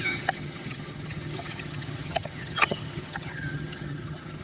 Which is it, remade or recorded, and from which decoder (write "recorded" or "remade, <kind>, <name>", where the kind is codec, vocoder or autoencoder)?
remade, vocoder, HiFi-GAN